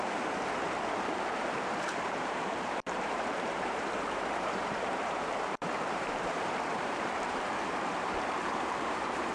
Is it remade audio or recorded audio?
remade